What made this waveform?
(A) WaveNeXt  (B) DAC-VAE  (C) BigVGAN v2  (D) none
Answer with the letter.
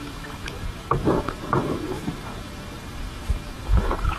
B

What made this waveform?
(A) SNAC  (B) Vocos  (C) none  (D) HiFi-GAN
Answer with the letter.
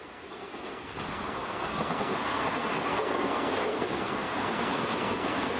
A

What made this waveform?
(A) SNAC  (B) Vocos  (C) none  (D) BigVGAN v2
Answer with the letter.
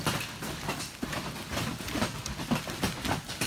C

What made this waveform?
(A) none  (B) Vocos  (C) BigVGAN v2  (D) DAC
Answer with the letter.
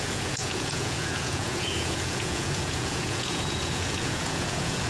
B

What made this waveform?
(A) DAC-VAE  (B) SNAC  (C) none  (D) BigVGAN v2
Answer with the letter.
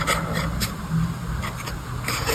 C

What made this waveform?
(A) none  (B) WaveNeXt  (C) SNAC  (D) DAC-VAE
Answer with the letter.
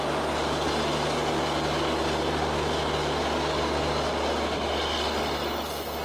A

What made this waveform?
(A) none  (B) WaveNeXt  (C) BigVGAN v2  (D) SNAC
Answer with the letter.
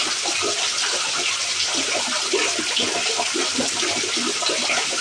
A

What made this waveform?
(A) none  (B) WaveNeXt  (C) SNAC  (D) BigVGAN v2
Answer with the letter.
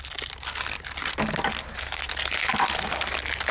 A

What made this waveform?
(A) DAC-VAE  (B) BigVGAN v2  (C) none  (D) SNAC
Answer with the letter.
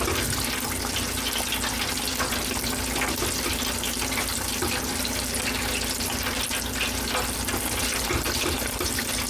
C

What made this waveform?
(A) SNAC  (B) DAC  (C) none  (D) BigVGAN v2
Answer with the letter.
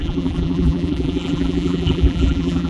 D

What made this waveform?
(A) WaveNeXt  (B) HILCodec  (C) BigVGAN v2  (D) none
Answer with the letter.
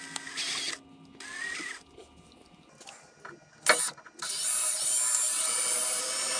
D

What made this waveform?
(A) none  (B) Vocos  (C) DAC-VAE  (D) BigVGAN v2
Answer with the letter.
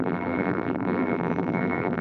D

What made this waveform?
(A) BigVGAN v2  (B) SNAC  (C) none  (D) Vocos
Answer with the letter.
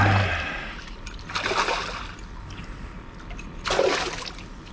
C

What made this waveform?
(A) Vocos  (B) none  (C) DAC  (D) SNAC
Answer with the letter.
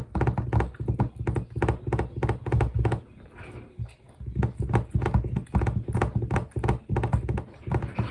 B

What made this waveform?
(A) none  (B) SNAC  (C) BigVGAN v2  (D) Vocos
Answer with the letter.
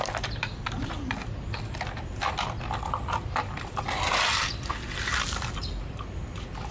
A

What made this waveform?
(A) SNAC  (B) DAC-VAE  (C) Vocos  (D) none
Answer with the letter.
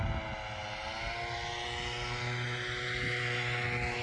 D